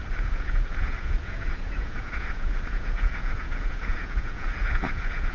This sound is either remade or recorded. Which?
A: remade